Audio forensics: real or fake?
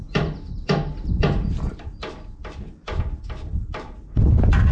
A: real